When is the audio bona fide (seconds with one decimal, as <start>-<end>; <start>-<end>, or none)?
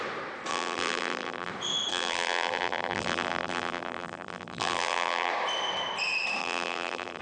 0.0-0.5; 1.5-1.9; 5.3-6.4